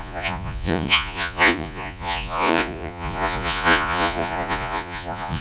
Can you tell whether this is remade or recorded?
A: remade